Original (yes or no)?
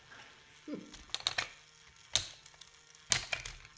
yes